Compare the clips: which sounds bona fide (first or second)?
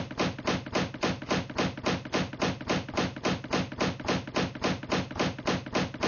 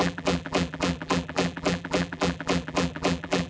first